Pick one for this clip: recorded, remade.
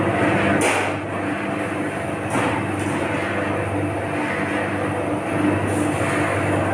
recorded